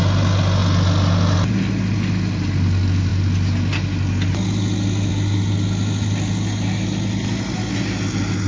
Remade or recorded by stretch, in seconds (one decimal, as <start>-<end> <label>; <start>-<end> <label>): 0.0-8.5 recorded